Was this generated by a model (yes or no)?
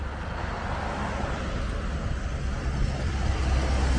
no